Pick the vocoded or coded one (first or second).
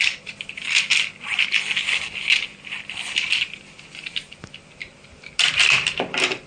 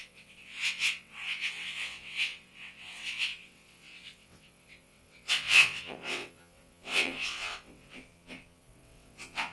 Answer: second